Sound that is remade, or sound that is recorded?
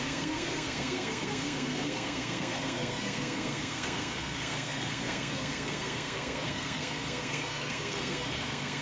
remade